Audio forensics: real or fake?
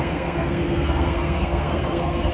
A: fake